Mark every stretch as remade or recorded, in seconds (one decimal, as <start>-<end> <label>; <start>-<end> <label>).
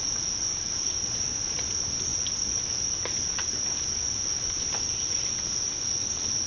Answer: 0.0-6.5 recorded